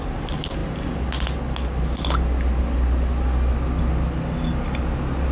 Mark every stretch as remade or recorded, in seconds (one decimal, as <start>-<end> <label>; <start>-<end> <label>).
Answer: 0.0-5.3 recorded